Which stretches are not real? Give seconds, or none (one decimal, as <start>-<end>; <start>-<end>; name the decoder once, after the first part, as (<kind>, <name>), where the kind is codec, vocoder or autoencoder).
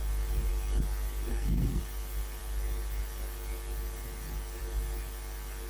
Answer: 1.3-1.8 (codec, SNAC)